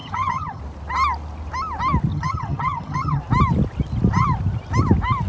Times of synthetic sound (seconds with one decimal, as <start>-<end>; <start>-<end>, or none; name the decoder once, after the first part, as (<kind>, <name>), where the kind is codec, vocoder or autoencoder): 0.0-0.6 (vocoder, HiFi-GAN); 2.1-3.2